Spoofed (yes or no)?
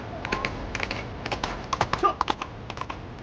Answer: no